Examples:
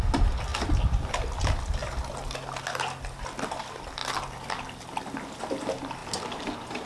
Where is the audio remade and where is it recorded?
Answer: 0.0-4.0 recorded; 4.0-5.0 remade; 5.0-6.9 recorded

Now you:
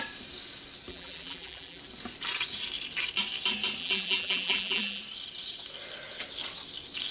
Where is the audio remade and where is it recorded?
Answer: 0.0-0.9 recorded; 0.9-1.8 remade; 1.8-3.8 recorded; 3.8-5.0 remade; 5.0-7.1 recorded

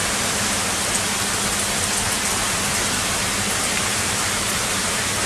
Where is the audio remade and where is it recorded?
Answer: 0.0-3.2 recorded; 3.2-5.3 remade

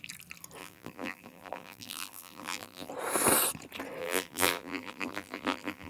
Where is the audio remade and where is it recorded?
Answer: 0.0-0.6 recorded; 0.6-2.9 remade; 2.9-4.0 recorded; 4.0-5.9 remade

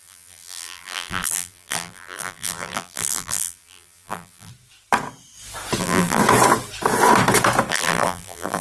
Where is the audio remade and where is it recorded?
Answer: 0.0-4.5 remade; 4.5-5.8 recorded; 5.8-6.2 remade; 6.2-7.7 recorded; 7.7-8.6 remade

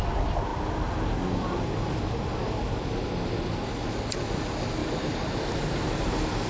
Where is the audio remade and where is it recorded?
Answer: 0.0-4.8 recorded; 4.8-6.5 remade

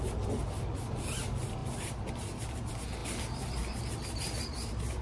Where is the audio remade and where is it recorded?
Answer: 0.0-5.0 recorded

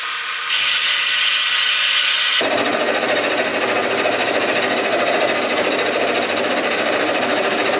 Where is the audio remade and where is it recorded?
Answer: 0.0-3.5 remade; 3.5-6.5 recorded; 6.5-7.8 remade